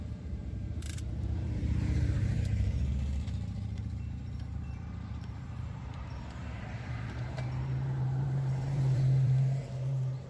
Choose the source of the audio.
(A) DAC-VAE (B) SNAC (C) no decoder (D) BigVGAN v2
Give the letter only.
D